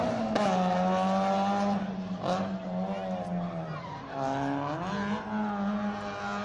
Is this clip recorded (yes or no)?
yes